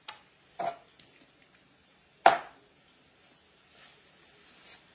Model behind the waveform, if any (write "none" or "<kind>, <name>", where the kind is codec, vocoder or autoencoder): none